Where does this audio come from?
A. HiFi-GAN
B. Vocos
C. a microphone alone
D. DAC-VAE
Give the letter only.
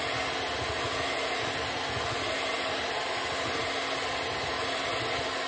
C